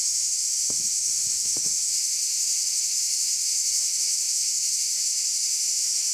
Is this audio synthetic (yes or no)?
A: yes